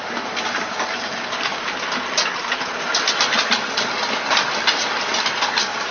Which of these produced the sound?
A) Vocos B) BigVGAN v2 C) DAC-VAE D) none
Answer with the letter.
D